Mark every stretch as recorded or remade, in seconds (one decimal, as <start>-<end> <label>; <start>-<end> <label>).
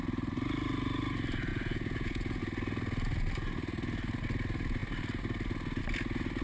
0.0-1.5 recorded; 1.5-2.4 remade; 2.4-6.4 recorded